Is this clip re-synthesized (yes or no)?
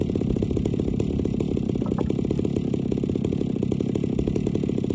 no